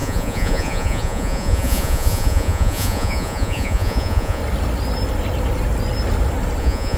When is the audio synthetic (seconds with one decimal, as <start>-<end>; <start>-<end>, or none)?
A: 0.0-4.4; 6.6-7.0